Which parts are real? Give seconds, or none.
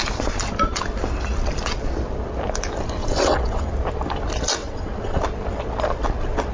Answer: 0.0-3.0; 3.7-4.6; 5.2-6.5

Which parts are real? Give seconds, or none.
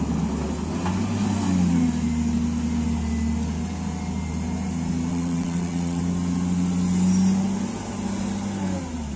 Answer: 0.0-5.1; 6.0-9.2